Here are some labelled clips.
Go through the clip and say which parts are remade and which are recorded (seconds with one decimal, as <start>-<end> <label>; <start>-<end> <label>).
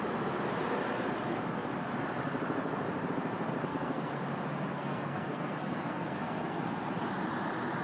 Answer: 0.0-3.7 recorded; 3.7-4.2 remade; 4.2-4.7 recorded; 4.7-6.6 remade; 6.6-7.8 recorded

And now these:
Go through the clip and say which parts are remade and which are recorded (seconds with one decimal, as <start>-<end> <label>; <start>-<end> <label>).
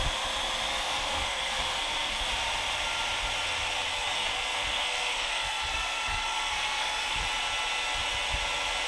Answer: 0.0-0.7 recorded; 0.7-2.2 remade; 2.2-3.9 recorded; 3.9-7.2 remade; 7.2-8.9 recorded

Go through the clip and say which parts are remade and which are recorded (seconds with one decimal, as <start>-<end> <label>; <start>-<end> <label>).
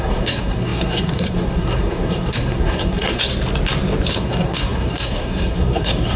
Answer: 0.0-3.3 remade; 3.3-4.1 recorded; 4.1-6.2 remade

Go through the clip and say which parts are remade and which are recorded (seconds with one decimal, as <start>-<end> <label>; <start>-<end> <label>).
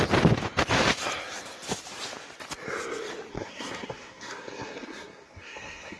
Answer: 0.0-3.3 recorded; 3.3-6.0 remade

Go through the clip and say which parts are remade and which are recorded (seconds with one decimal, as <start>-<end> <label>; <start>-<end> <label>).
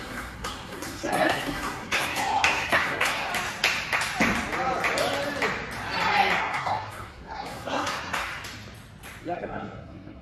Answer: 0.0-3.3 remade; 3.3-6.4 recorded; 6.4-8.3 remade; 8.3-9.2 recorded; 9.2-10.2 remade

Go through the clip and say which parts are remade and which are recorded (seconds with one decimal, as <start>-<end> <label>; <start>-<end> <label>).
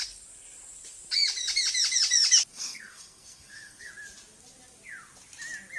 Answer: 0.0-2.5 recorded; 2.5-3.9 remade; 3.9-5.8 recorded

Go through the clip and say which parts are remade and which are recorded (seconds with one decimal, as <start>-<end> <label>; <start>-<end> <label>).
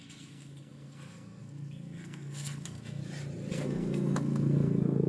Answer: 0.0-3.0 remade; 3.0-3.5 recorded; 3.5-5.1 remade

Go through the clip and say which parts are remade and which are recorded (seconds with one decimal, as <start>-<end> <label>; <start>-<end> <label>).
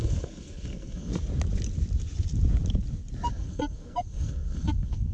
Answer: 0.0-1.1 remade; 1.1-3.3 recorded; 3.3-5.1 remade